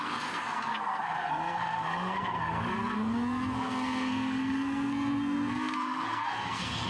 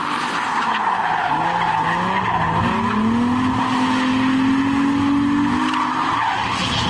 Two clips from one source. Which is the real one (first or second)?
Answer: second